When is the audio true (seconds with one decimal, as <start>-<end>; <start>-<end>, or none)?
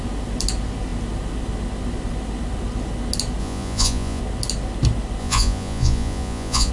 0.0-3.4; 4.2-5.2